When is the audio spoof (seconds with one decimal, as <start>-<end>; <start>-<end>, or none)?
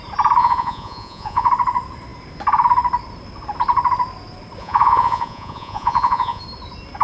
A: 0.4-1.5; 4.6-6.4